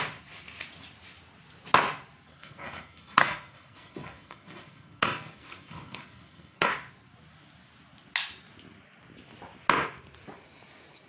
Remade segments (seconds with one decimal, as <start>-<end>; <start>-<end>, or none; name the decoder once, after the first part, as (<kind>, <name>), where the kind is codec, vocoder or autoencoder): 2.3-6.7 (codec, SNAC)